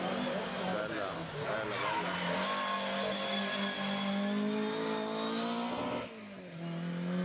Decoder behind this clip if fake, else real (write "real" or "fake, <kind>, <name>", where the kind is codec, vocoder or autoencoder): real